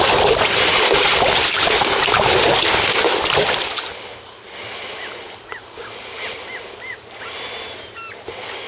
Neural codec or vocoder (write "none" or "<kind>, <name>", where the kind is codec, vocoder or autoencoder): none